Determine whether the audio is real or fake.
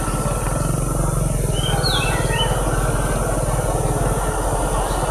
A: real